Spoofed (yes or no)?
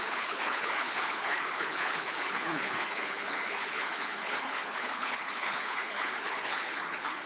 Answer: yes